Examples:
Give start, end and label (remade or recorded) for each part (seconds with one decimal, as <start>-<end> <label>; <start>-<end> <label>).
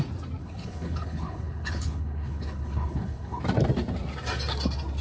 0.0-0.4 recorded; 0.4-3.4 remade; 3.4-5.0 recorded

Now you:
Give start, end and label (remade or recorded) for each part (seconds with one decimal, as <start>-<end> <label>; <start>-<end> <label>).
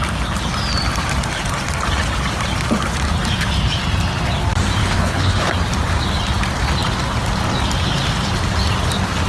0.0-4.8 recorded; 4.8-5.5 remade; 5.5-9.3 recorded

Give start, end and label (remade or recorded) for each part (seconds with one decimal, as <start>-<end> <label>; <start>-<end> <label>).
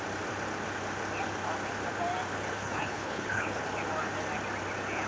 0.0-2.5 recorded; 2.5-3.6 remade; 3.6-5.1 recorded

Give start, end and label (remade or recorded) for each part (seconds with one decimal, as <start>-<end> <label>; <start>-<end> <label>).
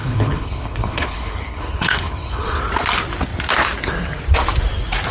0.0-2.6 remade; 2.6-5.1 recorded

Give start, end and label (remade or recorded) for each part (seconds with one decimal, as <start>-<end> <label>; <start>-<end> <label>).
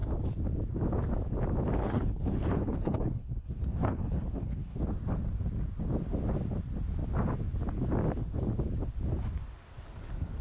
0.0-1.8 recorded; 1.8-4.8 remade; 4.8-10.4 recorded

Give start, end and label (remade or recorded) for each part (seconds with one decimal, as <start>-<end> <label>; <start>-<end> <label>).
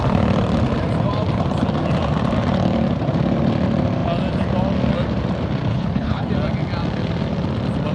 0.0-5.7 recorded; 5.7-6.3 remade; 6.3-7.9 recorded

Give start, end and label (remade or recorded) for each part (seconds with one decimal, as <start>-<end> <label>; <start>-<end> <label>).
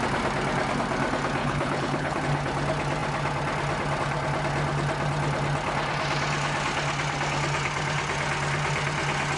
0.0-1.4 recorded; 1.4-2.2 remade; 2.2-9.4 recorded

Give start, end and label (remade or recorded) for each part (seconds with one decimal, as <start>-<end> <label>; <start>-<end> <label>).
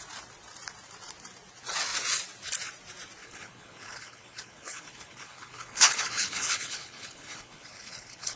0.0-3.2 recorded; 3.2-8.4 remade